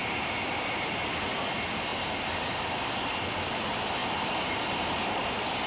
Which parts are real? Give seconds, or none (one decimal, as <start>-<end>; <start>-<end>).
0.0-5.7